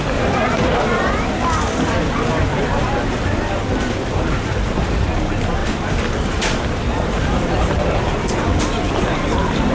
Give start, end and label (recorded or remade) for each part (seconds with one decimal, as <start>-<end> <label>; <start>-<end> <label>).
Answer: 0.0-5.6 recorded; 5.6-7.6 remade; 7.6-9.7 recorded

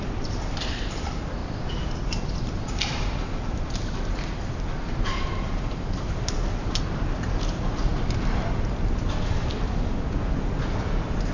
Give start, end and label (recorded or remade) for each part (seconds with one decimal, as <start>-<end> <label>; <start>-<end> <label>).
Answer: 0.0-1.4 recorded; 1.4-5.7 remade; 5.7-7.9 recorded; 7.9-9.5 remade; 9.5-11.3 recorded

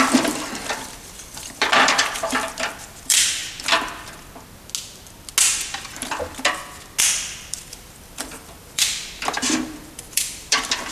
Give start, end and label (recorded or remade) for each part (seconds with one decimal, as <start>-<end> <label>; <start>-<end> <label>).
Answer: 0.0-3.4 remade; 3.4-7.0 recorded; 7.0-10.9 remade